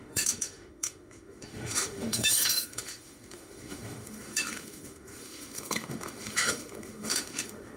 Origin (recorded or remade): remade